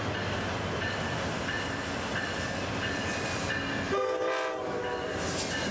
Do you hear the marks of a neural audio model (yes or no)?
no